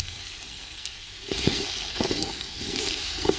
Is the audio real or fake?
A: fake